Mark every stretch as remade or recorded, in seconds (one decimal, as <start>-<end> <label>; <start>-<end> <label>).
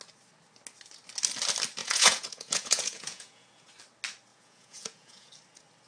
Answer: 0.0-1.8 recorded; 1.8-3.7 remade; 3.7-4.3 recorded; 4.3-5.3 remade; 5.3-5.9 recorded